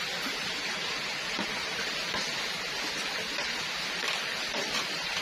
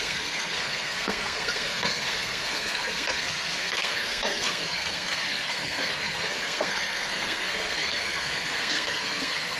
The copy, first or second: second